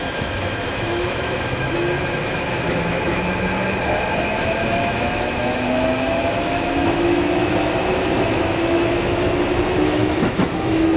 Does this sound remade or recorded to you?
remade